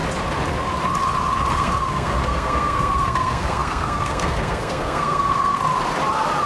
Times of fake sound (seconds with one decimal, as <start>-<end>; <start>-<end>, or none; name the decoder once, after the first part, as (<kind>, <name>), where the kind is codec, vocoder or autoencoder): 1.5-5.6 (codec, SNAC)